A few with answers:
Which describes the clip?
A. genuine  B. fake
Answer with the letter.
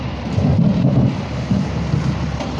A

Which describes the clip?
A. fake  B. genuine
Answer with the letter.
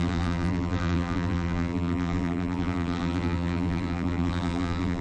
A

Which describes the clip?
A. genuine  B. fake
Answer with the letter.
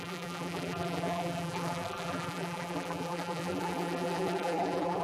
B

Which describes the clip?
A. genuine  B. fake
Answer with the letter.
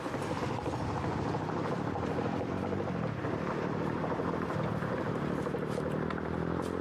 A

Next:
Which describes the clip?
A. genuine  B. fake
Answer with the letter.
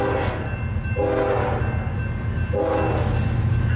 A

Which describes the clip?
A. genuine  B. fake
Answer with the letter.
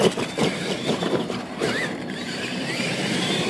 B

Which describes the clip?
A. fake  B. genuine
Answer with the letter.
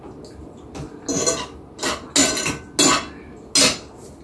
B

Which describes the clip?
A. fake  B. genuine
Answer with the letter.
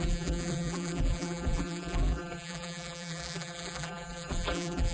A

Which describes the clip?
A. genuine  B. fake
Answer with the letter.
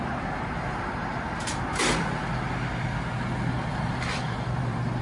B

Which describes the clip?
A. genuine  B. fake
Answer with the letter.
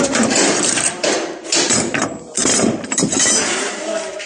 B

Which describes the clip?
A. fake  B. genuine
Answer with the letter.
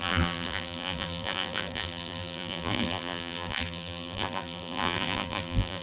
A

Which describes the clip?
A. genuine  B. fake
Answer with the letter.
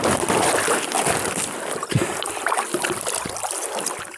A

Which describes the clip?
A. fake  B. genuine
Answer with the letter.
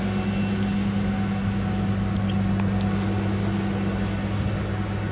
B